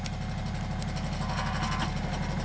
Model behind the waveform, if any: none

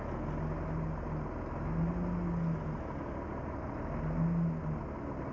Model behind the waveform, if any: none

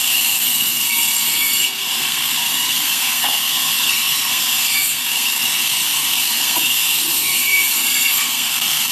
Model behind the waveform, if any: codec, SNAC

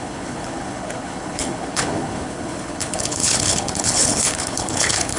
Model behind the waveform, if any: codec, HILCodec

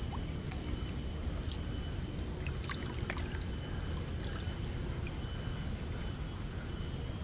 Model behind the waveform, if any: none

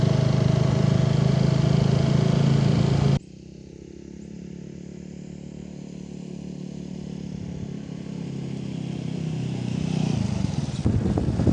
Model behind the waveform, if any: none